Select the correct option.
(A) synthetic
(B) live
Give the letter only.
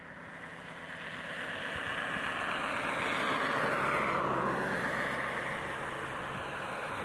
B